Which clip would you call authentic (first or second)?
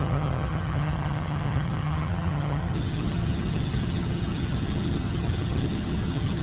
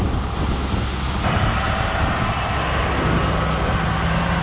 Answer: second